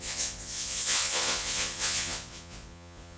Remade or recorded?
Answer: remade